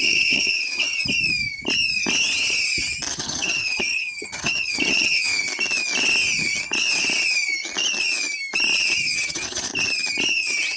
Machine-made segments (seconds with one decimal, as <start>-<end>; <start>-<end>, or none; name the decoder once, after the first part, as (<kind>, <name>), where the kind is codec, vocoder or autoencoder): 0.0-1.0 (vocoder, HiFi-GAN); 3.1-5.3; 9.0-9.7; 10.3-10.8